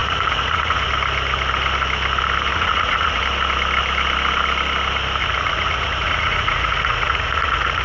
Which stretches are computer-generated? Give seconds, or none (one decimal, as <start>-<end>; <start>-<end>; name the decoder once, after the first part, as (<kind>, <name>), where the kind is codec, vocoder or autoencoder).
0.0-0.9 (vocoder, Vocos); 2.5-3.2; 5.2-7.8